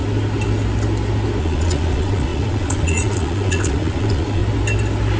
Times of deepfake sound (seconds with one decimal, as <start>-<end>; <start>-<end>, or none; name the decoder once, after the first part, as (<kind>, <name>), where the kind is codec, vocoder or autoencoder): 1.4-4.4 (vocoder, Vocos)